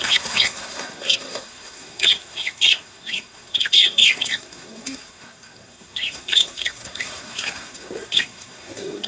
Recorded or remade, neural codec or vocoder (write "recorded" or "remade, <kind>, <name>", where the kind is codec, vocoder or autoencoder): remade, codec, SNAC